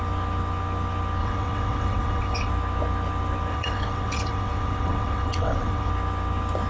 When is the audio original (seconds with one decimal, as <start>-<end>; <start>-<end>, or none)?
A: 0.0-1.2; 2.5-3.5; 5.9-6.7